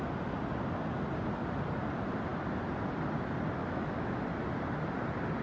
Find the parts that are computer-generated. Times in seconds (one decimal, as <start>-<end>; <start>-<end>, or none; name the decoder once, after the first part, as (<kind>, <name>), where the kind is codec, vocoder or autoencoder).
3.6-4.2 (autoencoder, DAC-VAE)